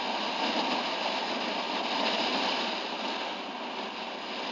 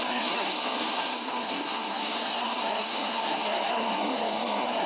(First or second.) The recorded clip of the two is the first